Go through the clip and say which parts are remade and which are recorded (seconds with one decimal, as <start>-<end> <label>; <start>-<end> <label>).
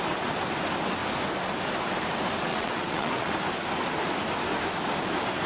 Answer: 0.0-2.5 recorded; 2.5-3.3 remade; 3.3-5.5 recorded